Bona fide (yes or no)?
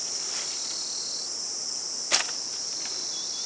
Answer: yes